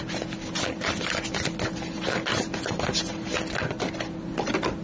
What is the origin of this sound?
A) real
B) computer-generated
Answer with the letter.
A